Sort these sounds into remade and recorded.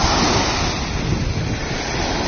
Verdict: recorded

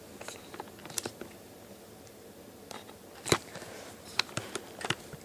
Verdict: recorded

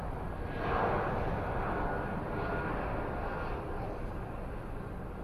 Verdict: recorded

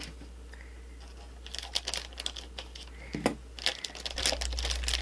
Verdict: recorded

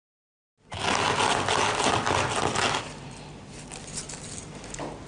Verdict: recorded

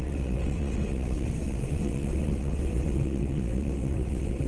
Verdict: remade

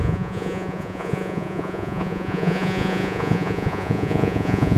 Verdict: remade